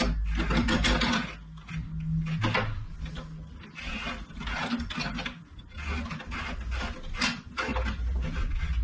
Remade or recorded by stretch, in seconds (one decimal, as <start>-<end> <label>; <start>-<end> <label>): 0.0-8.8 recorded